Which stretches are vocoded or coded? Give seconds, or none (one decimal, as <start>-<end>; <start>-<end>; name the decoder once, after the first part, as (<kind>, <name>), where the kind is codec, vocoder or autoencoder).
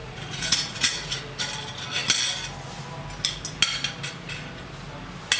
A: 0.0-1.2 (vocoder, Vocos)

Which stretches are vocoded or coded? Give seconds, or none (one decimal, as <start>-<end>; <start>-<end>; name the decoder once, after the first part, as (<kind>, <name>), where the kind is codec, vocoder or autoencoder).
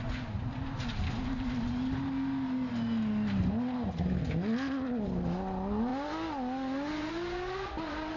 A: none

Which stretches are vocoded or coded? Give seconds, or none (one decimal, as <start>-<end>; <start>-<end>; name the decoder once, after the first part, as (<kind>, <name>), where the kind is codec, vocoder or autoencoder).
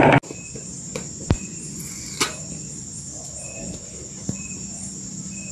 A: 0.9-2.1 (vocoder, Vocos)